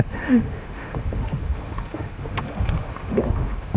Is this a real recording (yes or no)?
no